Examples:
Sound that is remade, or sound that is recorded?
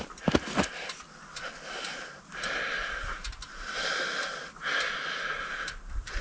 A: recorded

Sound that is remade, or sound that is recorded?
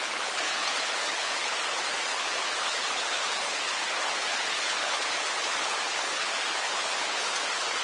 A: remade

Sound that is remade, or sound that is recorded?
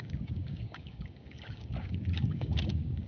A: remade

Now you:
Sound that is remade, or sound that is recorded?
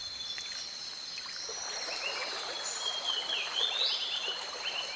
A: recorded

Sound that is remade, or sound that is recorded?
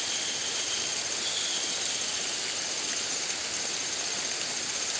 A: recorded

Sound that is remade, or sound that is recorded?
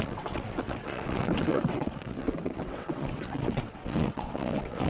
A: remade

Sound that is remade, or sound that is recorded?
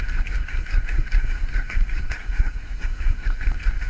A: remade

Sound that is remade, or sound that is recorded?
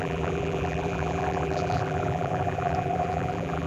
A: remade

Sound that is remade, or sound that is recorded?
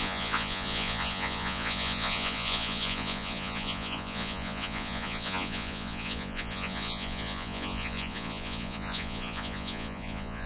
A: remade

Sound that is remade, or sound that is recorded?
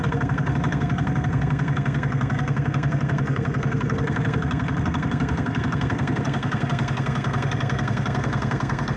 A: remade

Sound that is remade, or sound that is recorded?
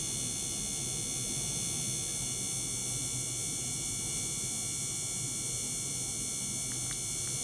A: recorded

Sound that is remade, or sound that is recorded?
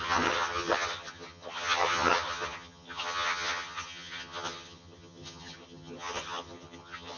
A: remade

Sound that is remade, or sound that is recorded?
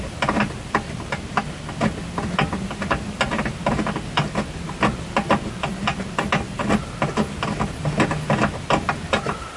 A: recorded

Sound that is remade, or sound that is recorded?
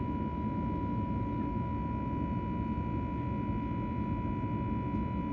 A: recorded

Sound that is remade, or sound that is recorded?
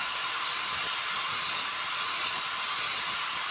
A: recorded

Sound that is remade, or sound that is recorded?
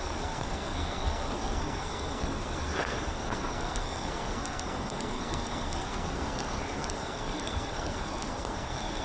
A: remade